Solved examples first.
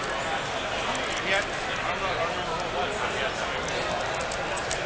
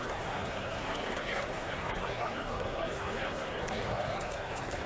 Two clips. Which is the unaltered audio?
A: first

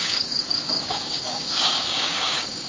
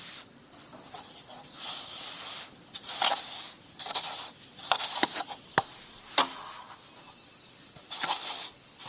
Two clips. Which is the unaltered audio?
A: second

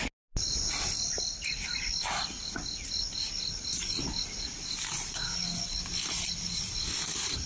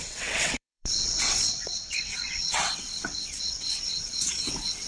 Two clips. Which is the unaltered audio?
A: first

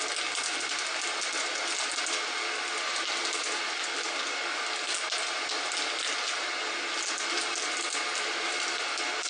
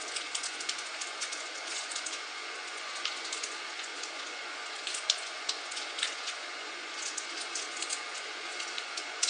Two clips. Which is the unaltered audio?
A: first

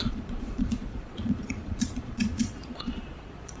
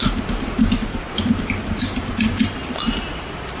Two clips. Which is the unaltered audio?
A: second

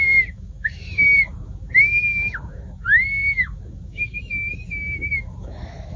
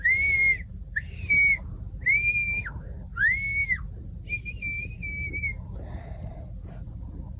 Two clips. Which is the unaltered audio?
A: second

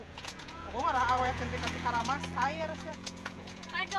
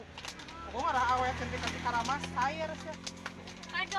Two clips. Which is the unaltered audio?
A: second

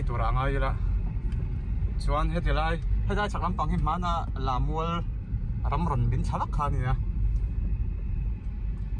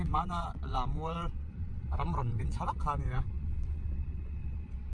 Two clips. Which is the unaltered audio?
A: first